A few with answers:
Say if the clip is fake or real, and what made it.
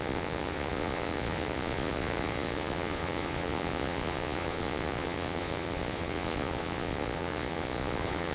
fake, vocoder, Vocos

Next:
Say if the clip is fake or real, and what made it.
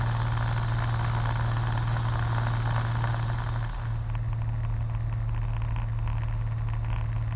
real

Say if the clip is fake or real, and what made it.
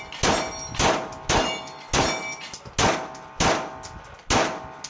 real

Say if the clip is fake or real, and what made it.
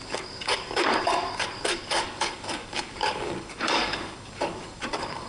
fake, codec, DAC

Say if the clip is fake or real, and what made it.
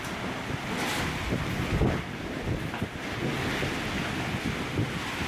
real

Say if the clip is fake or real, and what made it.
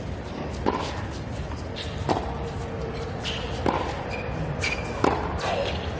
real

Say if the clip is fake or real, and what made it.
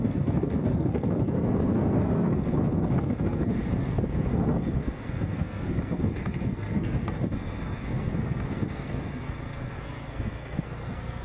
fake, codec, SNAC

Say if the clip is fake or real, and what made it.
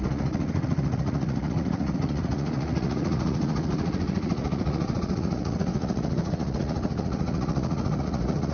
fake, vocoder, Vocos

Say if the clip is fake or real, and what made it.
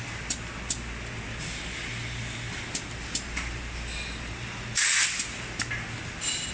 real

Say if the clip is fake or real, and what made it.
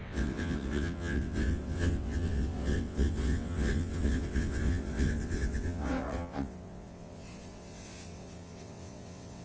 fake, vocoder, WaveNeXt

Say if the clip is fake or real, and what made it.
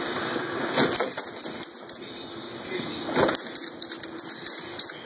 real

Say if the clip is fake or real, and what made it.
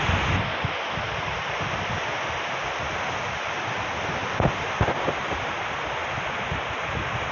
real